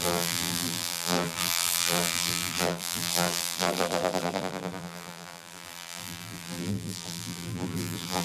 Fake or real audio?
fake